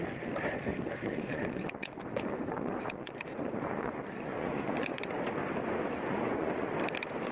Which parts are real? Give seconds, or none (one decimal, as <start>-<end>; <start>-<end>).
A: 0.0-0.7; 5.1-6.1; 6.7-7.3